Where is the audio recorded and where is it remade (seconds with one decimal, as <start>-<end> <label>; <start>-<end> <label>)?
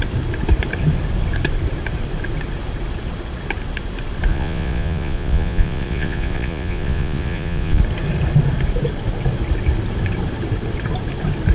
0.0-4.3 recorded; 4.3-7.8 remade; 7.8-11.5 recorded